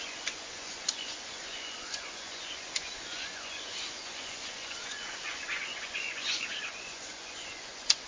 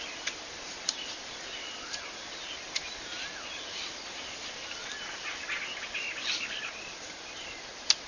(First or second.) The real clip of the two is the second